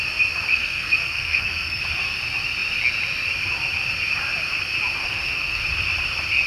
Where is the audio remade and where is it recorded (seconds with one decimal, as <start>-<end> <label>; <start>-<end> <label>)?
0.0-0.5 recorded; 0.5-1.8 remade; 1.8-5.0 recorded; 5.0-5.6 remade; 5.6-6.5 recorded